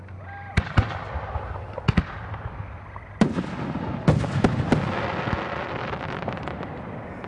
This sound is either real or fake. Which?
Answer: real